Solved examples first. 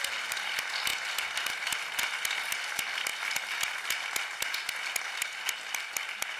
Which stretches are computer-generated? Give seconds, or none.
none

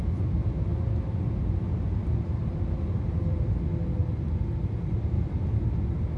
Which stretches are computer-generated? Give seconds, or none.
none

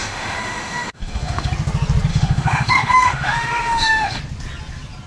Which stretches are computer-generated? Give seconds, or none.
0.0-1.5; 2.1-4.2

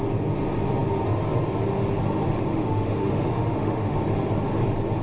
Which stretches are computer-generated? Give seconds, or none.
2.5-4.0